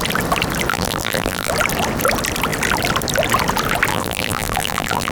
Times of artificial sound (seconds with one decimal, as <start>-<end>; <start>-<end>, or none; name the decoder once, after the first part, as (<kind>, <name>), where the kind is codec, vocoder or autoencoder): 0.7-1.5 (vocoder, BigVGAN v2); 3.9-5.1